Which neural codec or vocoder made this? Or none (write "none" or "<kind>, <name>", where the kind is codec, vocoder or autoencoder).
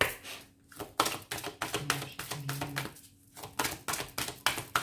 none